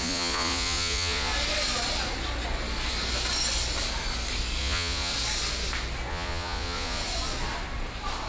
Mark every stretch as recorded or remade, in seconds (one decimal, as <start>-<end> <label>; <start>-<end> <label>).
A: 0.0-1.3 remade; 1.3-4.6 recorded; 4.6-5.1 remade; 5.1-6.1 recorded; 6.1-7.0 remade; 7.0-8.3 recorded